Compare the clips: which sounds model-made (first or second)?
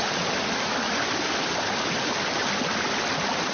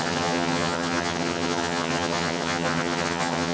second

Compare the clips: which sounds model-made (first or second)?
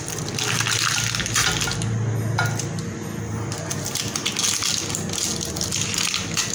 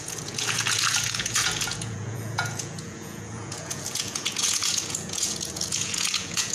second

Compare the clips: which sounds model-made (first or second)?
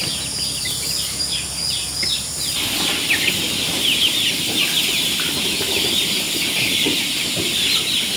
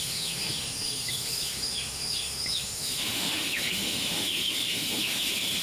second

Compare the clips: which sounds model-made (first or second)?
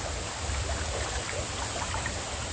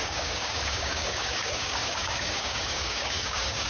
second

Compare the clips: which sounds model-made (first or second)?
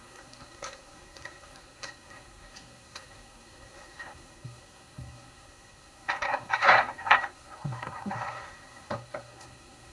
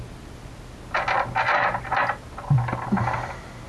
first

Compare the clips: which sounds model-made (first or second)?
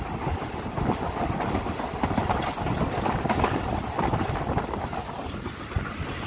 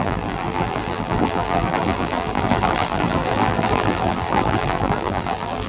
second